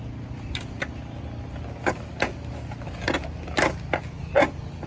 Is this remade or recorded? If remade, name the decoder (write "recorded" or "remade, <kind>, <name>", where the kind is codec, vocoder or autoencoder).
recorded